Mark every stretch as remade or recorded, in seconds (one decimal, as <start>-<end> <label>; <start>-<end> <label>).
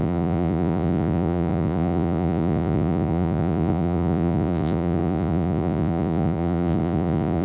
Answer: 0.0-7.4 remade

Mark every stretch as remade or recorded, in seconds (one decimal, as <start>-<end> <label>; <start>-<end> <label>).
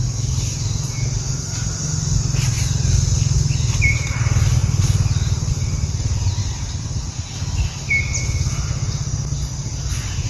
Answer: 0.0-10.3 recorded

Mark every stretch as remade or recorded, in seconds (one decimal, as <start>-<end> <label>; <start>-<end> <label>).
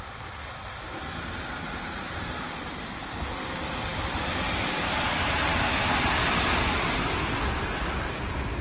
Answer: 0.0-8.6 recorded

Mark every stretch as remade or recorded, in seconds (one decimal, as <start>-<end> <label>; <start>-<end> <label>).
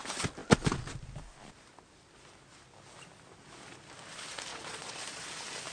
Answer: 0.0-4.5 recorded; 4.5-5.2 remade; 5.2-5.7 recorded